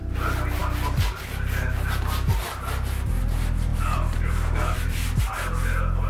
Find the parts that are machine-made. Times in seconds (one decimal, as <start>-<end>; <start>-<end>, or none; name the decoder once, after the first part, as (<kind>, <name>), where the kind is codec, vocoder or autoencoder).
3.7-5.2 (vocoder, BigVGAN v2)